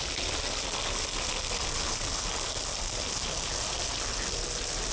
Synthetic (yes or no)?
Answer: no